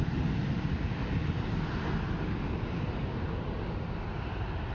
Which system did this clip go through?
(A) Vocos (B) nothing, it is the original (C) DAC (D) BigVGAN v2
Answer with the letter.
B